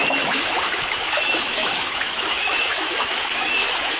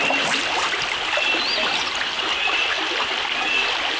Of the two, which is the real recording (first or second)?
second